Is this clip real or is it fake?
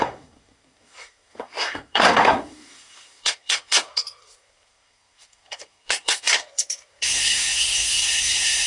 fake